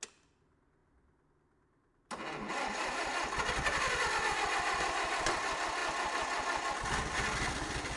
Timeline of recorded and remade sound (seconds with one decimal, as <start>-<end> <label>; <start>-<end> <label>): 0.0-8.0 recorded